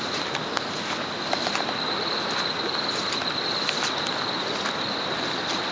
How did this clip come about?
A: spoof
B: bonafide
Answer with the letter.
B